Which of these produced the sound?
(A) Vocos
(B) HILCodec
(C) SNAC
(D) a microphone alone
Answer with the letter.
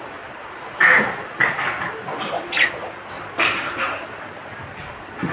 D